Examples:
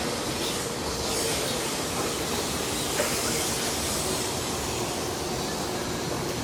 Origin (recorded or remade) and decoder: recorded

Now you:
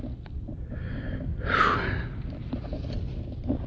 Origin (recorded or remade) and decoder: recorded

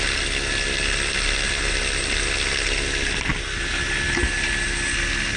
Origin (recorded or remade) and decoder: recorded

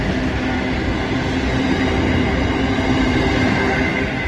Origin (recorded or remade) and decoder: recorded